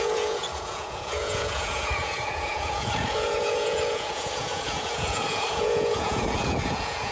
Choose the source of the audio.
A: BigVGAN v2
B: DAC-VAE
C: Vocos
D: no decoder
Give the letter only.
C